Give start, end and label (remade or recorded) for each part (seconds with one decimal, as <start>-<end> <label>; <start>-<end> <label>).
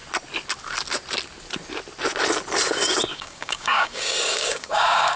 0.0-3.1 recorded; 3.1-5.2 remade